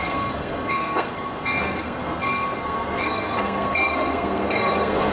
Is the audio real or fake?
fake